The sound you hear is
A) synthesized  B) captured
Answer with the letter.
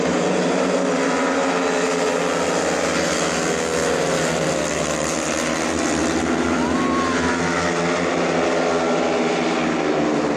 B